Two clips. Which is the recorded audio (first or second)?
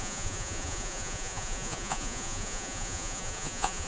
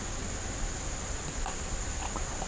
second